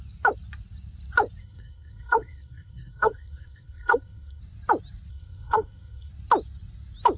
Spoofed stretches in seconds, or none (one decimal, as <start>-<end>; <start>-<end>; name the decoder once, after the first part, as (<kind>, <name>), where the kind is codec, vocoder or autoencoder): 1.4-4.4 (codec, SNAC); 5.1-6.1